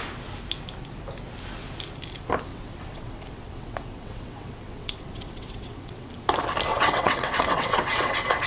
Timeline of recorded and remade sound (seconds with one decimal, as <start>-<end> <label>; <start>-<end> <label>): 0.0-2.5 recorded; 2.5-6.1 remade; 6.1-6.7 recorded; 6.7-8.1 remade; 8.1-8.5 recorded